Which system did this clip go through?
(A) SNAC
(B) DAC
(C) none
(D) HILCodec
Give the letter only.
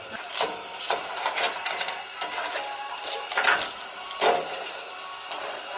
C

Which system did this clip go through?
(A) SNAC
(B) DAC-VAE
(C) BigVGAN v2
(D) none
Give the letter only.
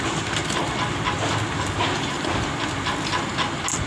D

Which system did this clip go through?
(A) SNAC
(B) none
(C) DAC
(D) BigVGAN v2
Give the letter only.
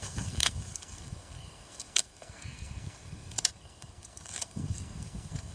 A